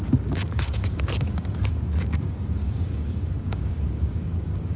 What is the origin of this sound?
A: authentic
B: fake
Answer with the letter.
B